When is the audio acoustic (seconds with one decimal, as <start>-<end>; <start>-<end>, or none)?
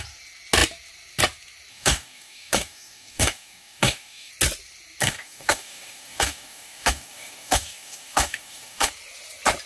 0.0-1.7; 4.3-5.0; 8.9-9.7